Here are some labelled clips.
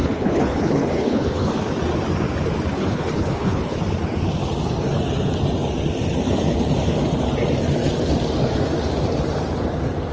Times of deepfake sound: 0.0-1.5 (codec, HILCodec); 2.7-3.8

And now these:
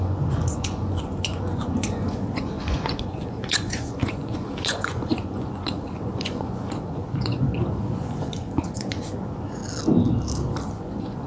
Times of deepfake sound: 0.0-9.6 (vocoder, Vocos); 10.7-11.3

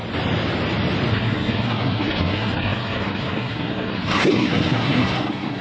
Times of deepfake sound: 1.1-5.6 (codec, SNAC)

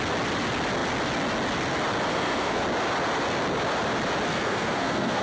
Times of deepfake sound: 2.1-2.6 (codec, SNAC); 4.3-5.2

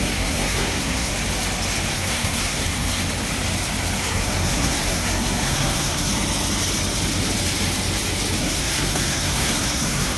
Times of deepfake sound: 0.0-1.1 (codec, SNAC); 1.9-3.0; 4.0-6.1; 8.4-10.2

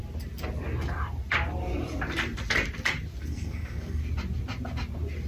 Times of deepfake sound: 3.2-4.0 (codec, SNAC)

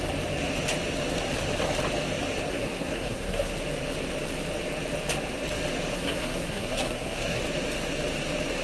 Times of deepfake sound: 2.5-3.5 (codec, SNAC); 5.9-7.4

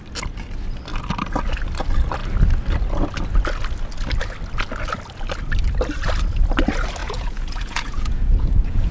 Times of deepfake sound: 7.0-8.9 (vocoder, Vocos)